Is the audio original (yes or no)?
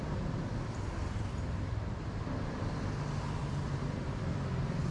no